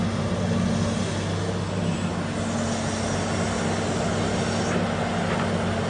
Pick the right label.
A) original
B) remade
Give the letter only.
A